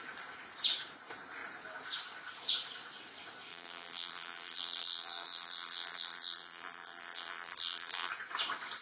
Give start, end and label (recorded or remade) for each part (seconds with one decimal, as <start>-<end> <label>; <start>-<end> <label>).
0.0-3.5 recorded; 3.5-8.1 remade; 8.1-8.8 recorded

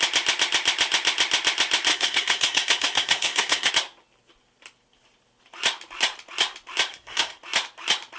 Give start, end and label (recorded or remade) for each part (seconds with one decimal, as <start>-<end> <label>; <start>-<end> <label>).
0.0-1.9 recorded; 1.9-3.7 remade; 3.7-6.9 recorded; 6.9-7.4 remade; 7.4-8.2 recorded

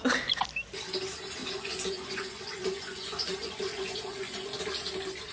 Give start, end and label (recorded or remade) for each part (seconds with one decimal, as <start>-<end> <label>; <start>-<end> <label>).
0.0-1.4 recorded; 1.4-4.6 remade; 4.6-5.3 recorded

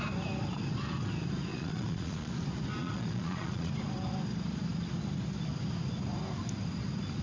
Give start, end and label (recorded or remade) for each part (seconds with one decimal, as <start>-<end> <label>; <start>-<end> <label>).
0.0-1.5 recorded; 1.5-2.3 remade; 2.3-2.8 recorded; 2.8-3.7 remade; 3.7-7.2 recorded

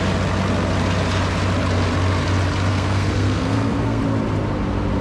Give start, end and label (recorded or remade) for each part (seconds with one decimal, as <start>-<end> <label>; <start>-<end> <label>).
0.0-2.7 recorded; 2.7-4.0 remade; 4.0-5.0 recorded

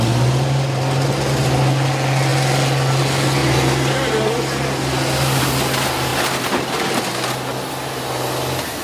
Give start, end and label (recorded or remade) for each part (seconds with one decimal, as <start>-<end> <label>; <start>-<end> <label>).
0.0-8.8 recorded

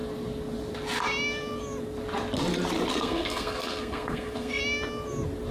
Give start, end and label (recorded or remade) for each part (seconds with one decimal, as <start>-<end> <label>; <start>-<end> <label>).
0.0-2.9 recorded; 2.9-4.6 remade; 4.6-5.5 recorded